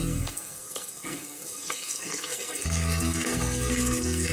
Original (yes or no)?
no